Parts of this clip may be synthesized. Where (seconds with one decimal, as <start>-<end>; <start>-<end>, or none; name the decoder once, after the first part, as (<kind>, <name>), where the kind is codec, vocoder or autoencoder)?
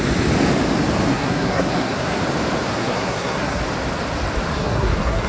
1.1-2.2 (codec, SNAC); 2.7-3.6; 4.5-5.3